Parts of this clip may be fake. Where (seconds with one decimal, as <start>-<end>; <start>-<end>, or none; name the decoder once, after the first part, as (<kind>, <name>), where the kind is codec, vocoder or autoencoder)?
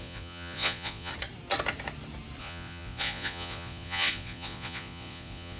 0.0-1.1 (vocoder, Vocos); 2.4-5.6